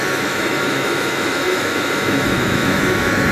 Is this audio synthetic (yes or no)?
yes